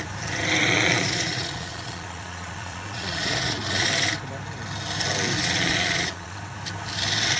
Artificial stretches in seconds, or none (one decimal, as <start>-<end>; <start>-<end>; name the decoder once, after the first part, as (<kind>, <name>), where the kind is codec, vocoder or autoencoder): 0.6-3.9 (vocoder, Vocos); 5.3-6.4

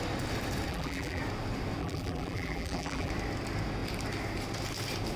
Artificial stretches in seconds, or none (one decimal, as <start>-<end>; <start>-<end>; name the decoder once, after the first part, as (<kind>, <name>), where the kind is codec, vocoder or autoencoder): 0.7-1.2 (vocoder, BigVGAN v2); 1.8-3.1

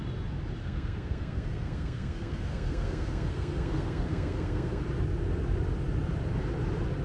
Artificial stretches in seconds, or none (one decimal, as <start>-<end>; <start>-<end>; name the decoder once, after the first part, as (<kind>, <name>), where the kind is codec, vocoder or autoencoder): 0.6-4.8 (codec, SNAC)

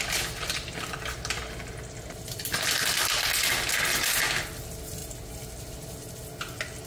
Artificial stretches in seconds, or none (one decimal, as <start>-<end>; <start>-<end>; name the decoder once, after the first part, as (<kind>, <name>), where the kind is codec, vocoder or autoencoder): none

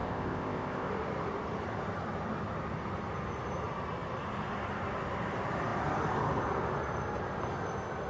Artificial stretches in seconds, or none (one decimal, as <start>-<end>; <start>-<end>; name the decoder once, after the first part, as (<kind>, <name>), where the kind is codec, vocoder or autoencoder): 0.0-0.9 (codec, ZipCodec)